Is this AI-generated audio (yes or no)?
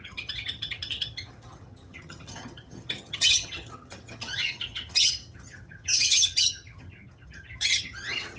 yes